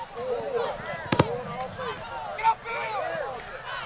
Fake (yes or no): no